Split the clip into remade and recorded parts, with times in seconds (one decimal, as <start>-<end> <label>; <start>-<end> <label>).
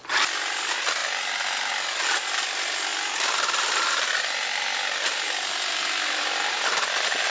0.0-7.3 recorded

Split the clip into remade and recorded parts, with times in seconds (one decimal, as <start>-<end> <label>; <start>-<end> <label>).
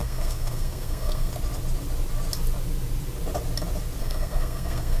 0.0-1.3 remade; 1.3-4.0 recorded; 4.0-5.0 remade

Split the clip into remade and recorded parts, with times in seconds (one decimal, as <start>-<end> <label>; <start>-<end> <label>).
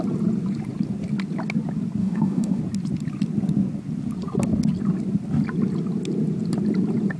0.0-2.0 recorded; 2.0-2.6 remade; 2.6-7.2 recorded